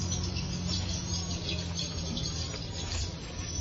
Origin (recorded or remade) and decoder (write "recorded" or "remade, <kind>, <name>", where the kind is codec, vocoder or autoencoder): recorded